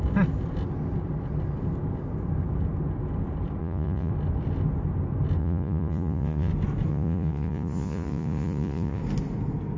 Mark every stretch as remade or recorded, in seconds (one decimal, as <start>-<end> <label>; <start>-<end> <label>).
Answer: 0.0-3.6 recorded; 3.6-4.1 remade; 4.1-5.4 recorded; 5.4-6.5 remade; 6.5-6.9 recorded; 6.9-9.0 remade; 9.0-9.8 recorded